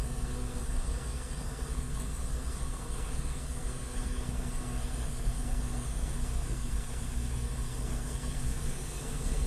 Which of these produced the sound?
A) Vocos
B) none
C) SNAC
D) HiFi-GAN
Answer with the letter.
C